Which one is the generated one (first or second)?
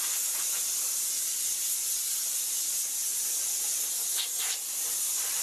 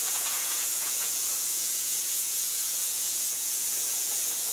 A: second